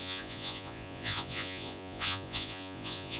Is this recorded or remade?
remade